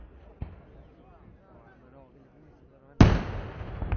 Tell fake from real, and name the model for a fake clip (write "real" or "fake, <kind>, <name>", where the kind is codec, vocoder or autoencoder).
real